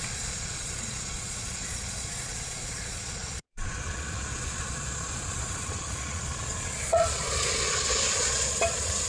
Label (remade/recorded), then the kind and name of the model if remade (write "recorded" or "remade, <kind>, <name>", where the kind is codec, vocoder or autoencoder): remade, vocoder, Vocos